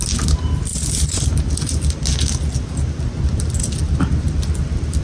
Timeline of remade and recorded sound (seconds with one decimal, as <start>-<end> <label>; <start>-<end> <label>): 0.0-5.0 recorded